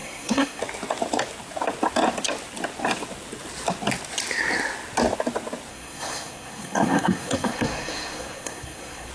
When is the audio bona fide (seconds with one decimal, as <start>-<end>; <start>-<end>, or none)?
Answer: 0.6-5.7

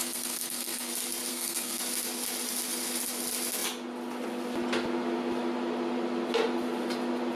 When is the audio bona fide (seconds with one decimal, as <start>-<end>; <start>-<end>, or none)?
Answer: 0.9-1.3; 1.8-7.4

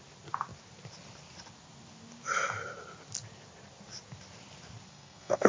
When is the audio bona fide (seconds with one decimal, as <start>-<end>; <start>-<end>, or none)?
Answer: 0.0-4.9

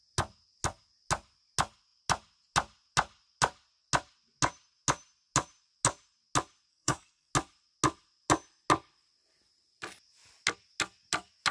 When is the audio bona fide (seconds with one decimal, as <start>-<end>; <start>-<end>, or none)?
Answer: 0.0-6.7; 7.3-11.5

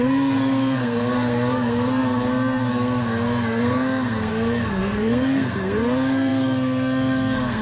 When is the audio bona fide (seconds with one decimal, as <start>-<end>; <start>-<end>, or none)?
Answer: none

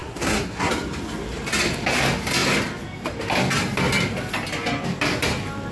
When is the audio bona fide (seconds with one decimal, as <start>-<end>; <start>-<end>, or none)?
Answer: 0.7-5.7